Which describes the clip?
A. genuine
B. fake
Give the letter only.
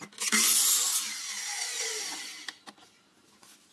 A